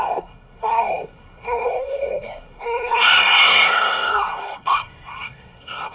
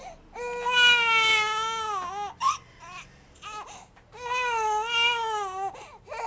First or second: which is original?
second